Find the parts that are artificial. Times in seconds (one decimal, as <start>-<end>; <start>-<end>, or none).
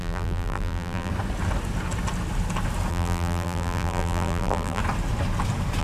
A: 0.0-1.1; 2.9-4.8